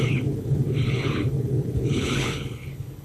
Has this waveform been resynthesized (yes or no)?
yes